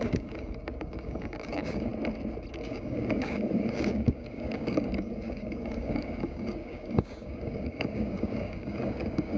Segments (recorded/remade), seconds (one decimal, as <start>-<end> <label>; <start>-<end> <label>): 0.0-1.9 remade; 1.9-2.5 recorded; 2.5-9.4 remade